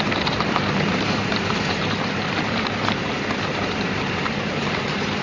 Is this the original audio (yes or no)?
no